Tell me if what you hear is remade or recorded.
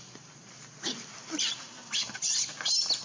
recorded